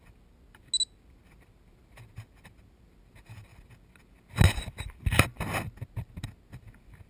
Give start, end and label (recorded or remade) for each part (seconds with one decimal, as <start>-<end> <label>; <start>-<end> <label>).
0.0-7.1 recorded